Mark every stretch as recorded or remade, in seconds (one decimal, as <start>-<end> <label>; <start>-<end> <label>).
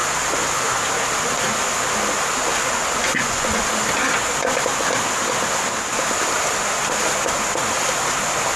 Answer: 0.0-3.0 recorded; 3.0-3.6 remade; 3.6-8.6 recorded